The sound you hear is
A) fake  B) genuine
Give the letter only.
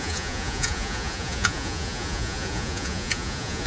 A